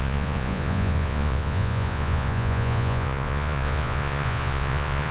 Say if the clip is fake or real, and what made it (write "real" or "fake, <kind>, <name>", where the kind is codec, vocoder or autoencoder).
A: fake, vocoder, Vocos